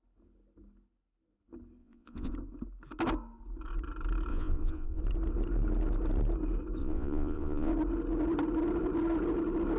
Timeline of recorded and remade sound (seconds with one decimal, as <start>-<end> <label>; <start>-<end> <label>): 0.0-1.8 recorded; 1.8-2.3 remade; 2.3-4.3 recorded; 4.3-5.0 remade; 5.0-6.8 recorded; 6.8-7.7 remade; 7.7-9.8 recorded